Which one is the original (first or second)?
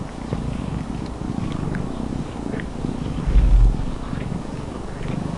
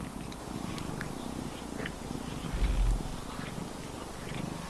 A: second